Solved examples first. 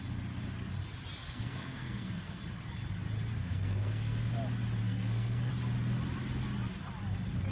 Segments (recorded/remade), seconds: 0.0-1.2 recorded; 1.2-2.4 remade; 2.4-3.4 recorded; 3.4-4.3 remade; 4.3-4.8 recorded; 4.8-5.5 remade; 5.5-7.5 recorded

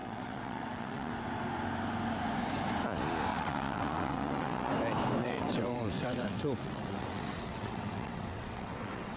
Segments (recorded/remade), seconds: 0.0-1.1 remade; 1.1-3.3 recorded; 3.3-4.7 remade; 4.7-5.2 recorded; 5.2-9.2 remade